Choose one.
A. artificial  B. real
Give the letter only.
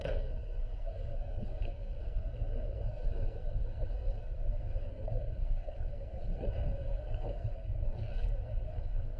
A